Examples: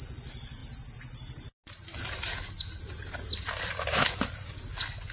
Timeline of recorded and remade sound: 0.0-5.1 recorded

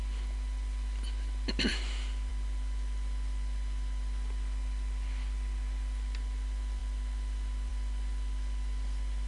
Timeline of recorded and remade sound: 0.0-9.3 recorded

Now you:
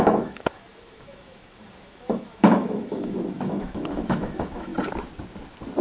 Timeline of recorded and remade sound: 0.0-4.7 remade; 4.7-5.8 recorded

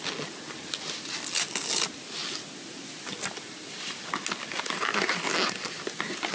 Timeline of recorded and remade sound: 0.0-6.3 recorded